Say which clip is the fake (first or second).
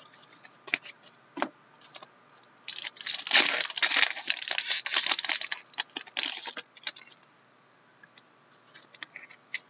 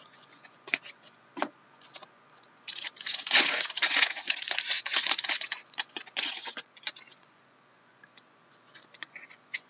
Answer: second